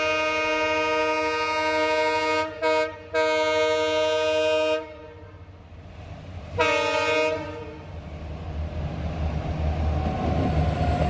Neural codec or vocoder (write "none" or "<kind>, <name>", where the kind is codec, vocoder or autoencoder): none